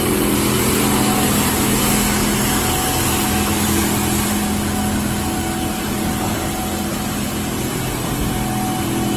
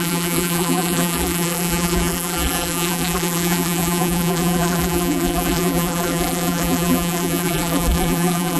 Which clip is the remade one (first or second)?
second